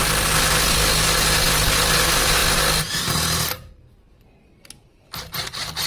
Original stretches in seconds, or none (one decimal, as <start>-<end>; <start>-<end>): 0.0-5.9